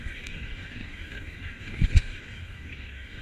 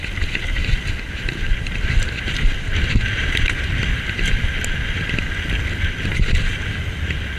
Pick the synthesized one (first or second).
first